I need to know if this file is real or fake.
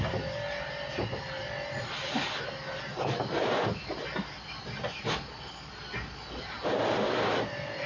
real